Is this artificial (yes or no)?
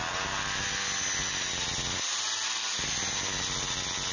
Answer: no